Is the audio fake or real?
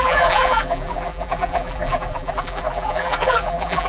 fake